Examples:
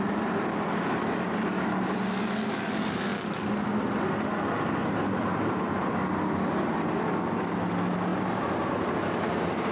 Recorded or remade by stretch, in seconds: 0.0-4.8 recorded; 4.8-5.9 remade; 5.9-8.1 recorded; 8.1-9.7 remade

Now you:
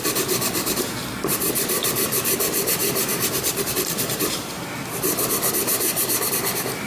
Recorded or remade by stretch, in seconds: 0.0-2.8 recorded; 2.8-4.7 remade; 4.7-5.6 recorded; 5.6-6.2 remade; 6.2-6.9 recorded

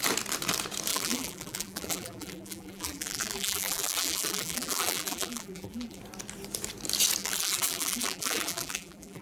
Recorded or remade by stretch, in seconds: 0.0-0.9 recorded; 0.9-6.0 remade; 6.0-7.2 recorded; 7.2-9.2 remade

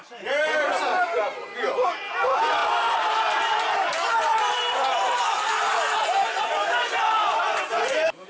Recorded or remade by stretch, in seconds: 0.0-2.6 remade; 2.6-4.1 recorded; 4.1-5.7 remade; 5.7-7.9 recorded; 7.9-8.3 remade